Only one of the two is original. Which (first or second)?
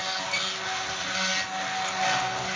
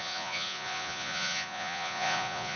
first